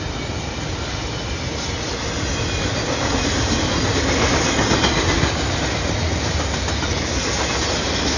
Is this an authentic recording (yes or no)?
yes